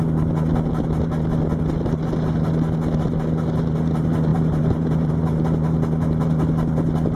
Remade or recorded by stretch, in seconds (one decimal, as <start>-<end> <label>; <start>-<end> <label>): 0.0-4.3 recorded; 4.3-5.1 remade; 5.1-7.2 recorded